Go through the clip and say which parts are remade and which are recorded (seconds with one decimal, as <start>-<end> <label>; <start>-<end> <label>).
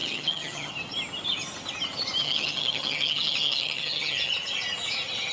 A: 0.0-0.7 remade; 0.7-2.2 recorded; 2.2-4.3 remade; 4.3-5.3 recorded